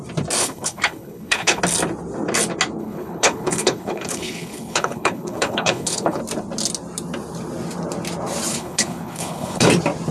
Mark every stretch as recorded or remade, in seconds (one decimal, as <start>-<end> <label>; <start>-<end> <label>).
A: 0.0-0.4 recorded; 0.4-1.6 remade; 1.6-2.8 recorded; 2.8-6.2 remade; 6.2-8.5 recorded; 8.5-9.7 remade; 9.7-10.1 recorded